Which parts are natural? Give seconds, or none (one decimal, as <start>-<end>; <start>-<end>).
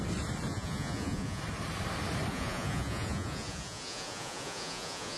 0.0-0.5; 1.4-2.3